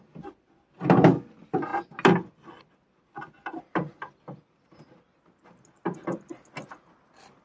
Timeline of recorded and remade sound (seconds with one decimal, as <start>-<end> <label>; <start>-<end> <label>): 0.0-7.4 recorded